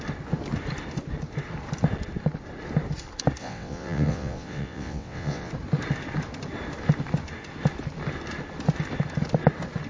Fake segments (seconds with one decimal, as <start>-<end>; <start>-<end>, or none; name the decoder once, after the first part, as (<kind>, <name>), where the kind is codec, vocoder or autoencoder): 3.4-5.5 (vocoder, WaveNeXt)